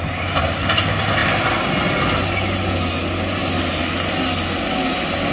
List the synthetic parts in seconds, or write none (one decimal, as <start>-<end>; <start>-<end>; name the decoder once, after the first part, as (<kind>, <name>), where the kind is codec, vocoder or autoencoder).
none